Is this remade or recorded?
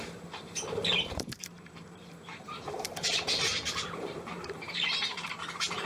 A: remade